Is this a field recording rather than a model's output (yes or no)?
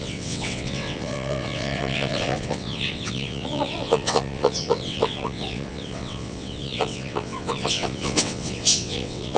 no